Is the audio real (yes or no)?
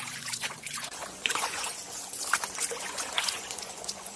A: no